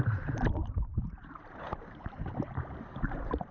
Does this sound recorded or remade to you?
remade